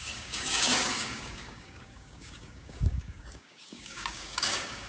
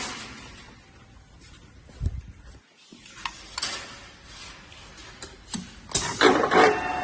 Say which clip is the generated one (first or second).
first